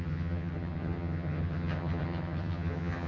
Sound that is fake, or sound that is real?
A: fake